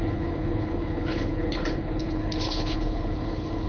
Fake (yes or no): yes